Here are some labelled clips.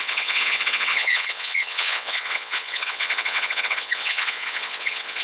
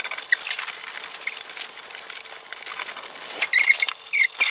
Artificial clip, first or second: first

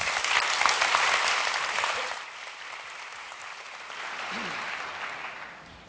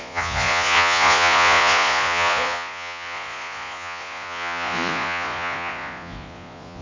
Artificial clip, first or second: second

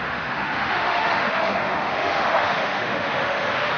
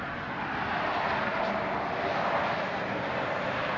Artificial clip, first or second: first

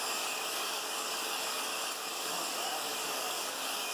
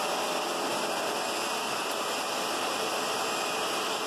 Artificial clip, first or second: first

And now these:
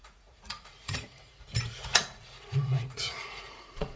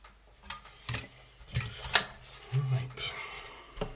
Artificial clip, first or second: first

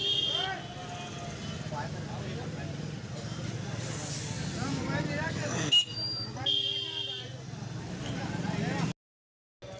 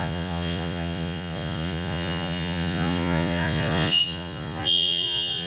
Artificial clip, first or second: second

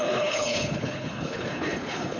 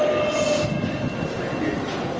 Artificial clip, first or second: first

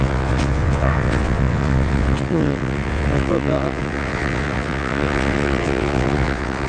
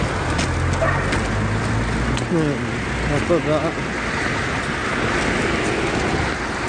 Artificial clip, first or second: first